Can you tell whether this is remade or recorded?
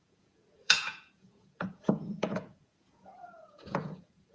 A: remade